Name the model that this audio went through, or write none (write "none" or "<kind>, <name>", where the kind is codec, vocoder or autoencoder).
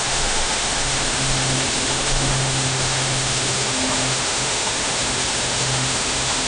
autoencoder, DAC-VAE